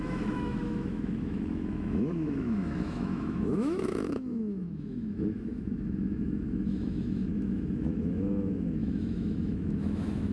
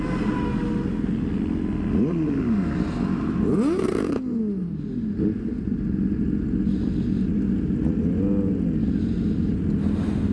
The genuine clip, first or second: second